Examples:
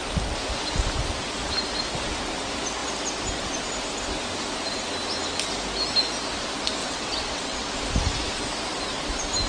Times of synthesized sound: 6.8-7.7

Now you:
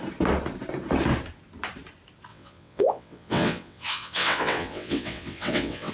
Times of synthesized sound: 2.3-5.9